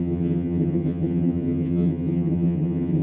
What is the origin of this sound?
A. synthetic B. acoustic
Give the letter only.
A